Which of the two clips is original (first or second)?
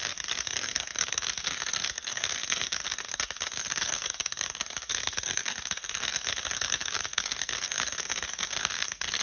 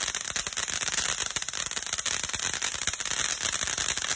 second